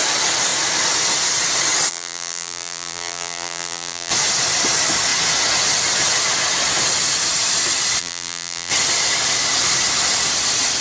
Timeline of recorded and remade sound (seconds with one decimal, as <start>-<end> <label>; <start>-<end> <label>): 0.0-1.9 recorded; 1.9-4.1 remade; 4.1-8.0 recorded; 8.0-8.7 remade; 8.7-10.8 recorded